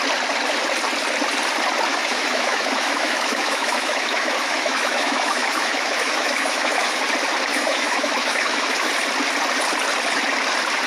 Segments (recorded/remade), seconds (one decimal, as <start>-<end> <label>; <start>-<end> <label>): 0.0-1.9 recorded; 1.9-7.0 remade; 7.0-7.5 recorded; 7.5-8.9 remade; 8.9-10.9 recorded